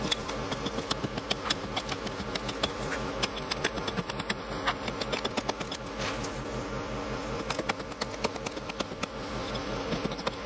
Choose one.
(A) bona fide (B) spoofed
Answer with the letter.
A